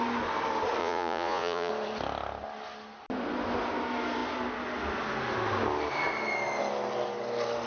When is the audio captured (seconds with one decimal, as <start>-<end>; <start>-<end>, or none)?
0.0-0.8; 1.7-7.7